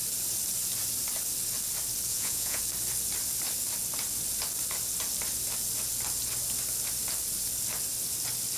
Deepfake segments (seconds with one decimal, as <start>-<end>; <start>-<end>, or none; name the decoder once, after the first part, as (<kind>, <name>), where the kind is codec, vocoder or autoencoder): 2.1-2.6 (vocoder, Vocos)